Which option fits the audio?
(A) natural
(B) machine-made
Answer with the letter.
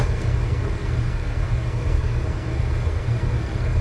B